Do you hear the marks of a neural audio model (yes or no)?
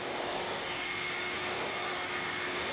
yes